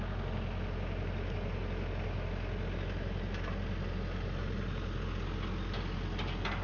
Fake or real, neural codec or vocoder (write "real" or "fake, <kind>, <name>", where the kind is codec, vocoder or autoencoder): real